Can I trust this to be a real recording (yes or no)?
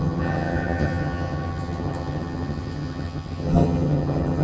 no